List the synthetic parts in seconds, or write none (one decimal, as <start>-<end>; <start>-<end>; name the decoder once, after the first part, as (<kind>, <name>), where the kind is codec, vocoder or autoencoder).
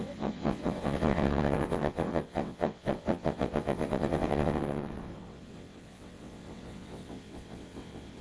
0.0-8.2 (vocoder, WaveNeXt)